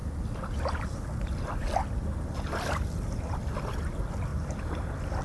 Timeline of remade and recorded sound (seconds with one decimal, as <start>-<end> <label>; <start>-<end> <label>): 0.0-5.2 recorded

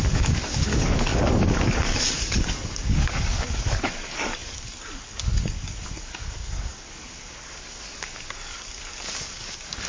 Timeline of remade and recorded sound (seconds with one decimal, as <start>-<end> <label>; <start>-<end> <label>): 0.0-9.9 remade

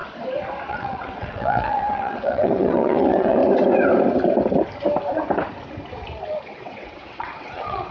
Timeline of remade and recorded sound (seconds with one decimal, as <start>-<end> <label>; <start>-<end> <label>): 0.0-0.7 recorded; 0.7-3.4 remade; 3.4-6.6 recorded; 6.6-7.9 remade

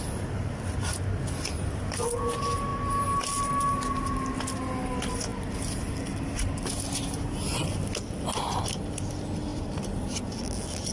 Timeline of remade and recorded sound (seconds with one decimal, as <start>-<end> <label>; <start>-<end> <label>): 0.0-2.7 recorded; 2.7-3.5 remade; 3.5-5.3 recorded; 5.3-6.7 remade; 6.7-9.5 recorded; 9.5-10.9 remade

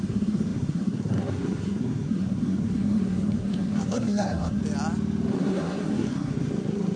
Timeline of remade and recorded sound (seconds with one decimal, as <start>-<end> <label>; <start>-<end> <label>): 0.0-4.6 remade; 4.6-5.3 recorded; 5.3-7.0 remade

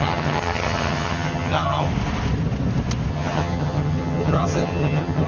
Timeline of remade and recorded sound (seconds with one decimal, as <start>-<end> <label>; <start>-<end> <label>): 0.0-1.9 remade; 1.9-3.1 recorded; 3.1-5.3 remade

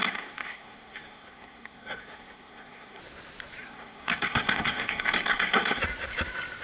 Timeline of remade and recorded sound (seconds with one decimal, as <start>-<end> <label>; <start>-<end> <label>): 0.0-3.0 remade; 3.0-3.6 recorded; 3.6-5.8 remade; 5.8-6.6 recorded